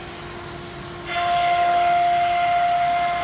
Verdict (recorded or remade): recorded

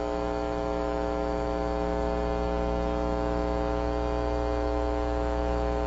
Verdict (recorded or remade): remade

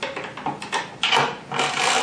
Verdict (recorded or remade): recorded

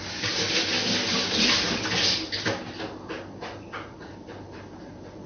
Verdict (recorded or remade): recorded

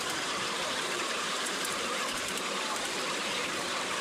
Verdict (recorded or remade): remade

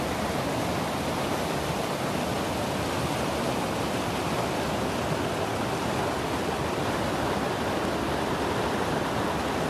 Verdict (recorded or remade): recorded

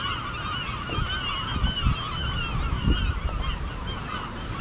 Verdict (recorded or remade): recorded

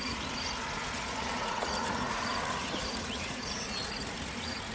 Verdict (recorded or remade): remade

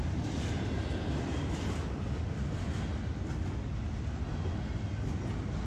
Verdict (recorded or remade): recorded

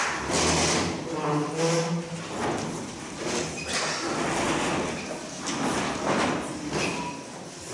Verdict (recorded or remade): recorded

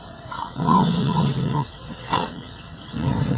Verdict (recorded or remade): remade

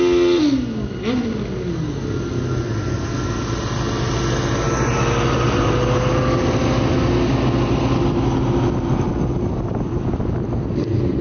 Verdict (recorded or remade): recorded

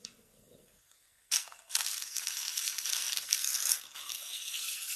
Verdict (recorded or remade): remade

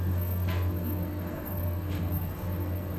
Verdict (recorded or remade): remade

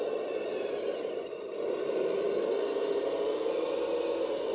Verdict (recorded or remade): recorded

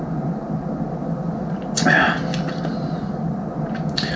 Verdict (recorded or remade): recorded